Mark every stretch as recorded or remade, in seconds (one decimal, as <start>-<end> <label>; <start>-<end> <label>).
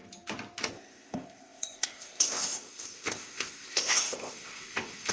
0.0-0.7 recorded; 0.7-5.1 remade